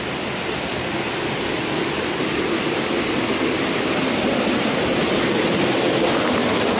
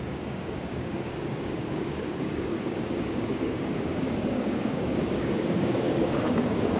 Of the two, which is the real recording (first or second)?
first